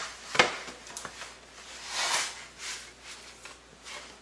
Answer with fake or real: real